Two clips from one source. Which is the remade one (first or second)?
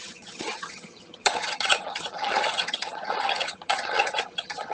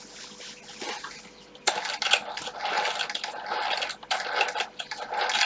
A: first